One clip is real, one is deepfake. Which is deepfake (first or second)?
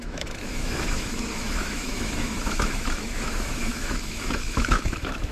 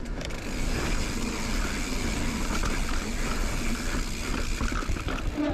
first